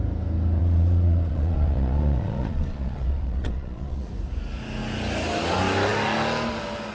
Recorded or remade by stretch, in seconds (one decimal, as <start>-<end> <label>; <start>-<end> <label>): 0.0-0.6 recorded; 0.6-4.1 remade; 4.1-6.9 recorded